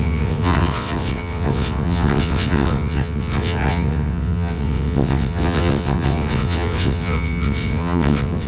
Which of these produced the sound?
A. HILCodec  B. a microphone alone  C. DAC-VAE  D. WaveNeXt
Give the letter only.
D